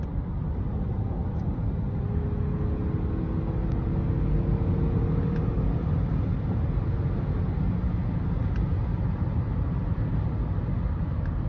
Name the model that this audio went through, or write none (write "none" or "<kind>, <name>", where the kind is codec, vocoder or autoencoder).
none